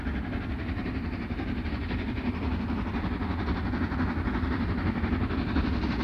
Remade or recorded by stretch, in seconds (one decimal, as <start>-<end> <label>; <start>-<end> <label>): 0.0-0.8 recorded; 0.8-1.7 remade; 1.7-6.0 recorded